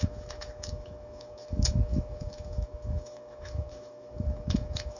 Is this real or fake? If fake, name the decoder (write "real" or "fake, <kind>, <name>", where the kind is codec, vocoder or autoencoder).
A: fake, autoencoder, DAC-VAE